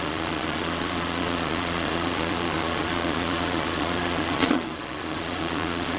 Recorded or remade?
remade